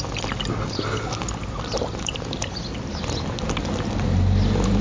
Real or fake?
real